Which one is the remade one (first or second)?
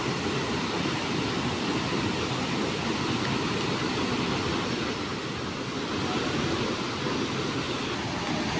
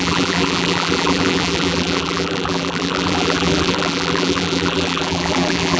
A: second